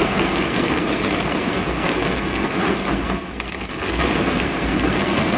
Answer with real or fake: fake